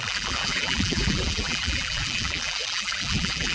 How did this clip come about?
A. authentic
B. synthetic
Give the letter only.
B